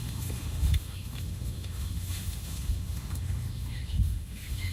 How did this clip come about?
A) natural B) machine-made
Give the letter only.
B